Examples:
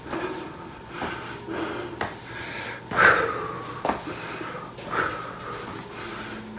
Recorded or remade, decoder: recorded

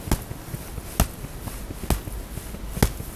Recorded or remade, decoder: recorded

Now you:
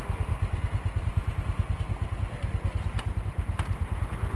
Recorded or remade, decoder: recorded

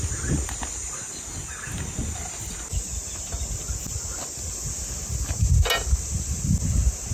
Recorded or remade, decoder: recorded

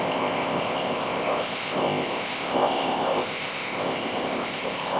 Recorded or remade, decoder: remade, codec, ZipCodec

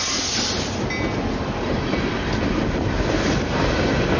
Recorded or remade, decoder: recorded